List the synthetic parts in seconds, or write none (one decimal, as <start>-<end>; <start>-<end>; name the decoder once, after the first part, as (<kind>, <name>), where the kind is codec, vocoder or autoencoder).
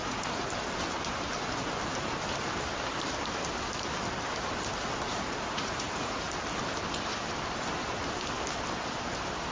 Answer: 0.0-0.5 (vocoder, Vocos); 5.1-6.3